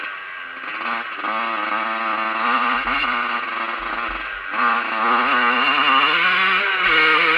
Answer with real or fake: real